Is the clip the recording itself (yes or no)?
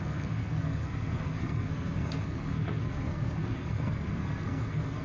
no